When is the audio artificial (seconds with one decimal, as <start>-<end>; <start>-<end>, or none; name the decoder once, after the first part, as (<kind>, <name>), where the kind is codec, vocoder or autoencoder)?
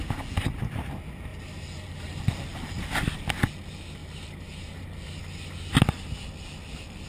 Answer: 1.3-2.2 (vocoder, BigVGAN v2); 4.0-5.2